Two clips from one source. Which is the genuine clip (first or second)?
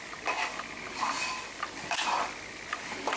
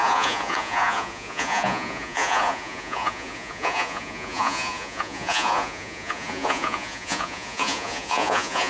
first